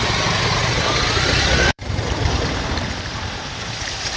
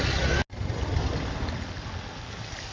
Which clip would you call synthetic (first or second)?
first